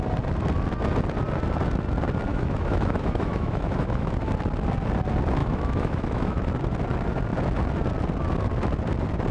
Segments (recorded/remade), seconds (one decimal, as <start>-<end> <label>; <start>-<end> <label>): 0.0-2.3 recorded; 2.3-4.3 remade; 4.3-5.4 recorded; 5.4-6.5 remade; 6.5-9.3 recorded